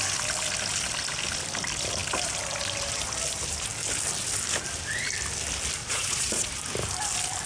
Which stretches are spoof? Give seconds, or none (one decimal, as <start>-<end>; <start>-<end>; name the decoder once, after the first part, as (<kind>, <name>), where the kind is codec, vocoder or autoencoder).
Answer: 5.8-6.5 (vocoder, Vocos)